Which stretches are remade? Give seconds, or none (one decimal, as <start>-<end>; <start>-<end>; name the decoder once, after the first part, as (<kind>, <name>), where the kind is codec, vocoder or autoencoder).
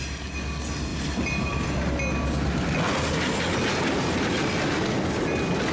none